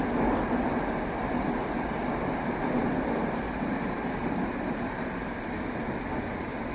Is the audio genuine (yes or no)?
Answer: yes